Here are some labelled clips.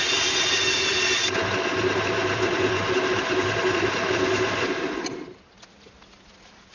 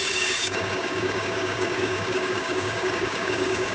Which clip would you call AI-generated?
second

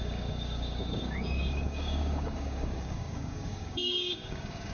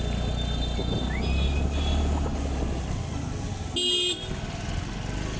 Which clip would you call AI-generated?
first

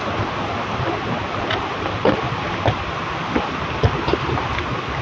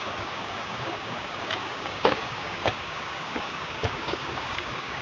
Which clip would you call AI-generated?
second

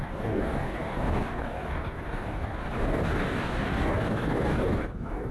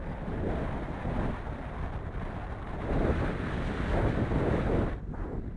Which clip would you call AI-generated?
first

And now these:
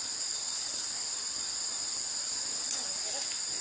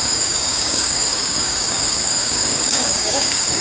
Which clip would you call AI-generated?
second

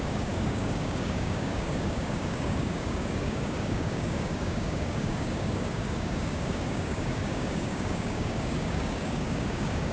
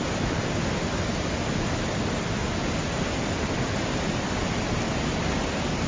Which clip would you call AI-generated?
first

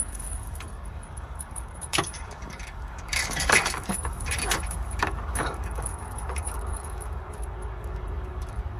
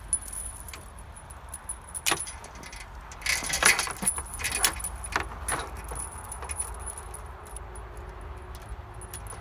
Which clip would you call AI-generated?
first